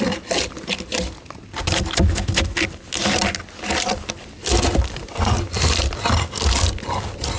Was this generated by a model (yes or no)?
no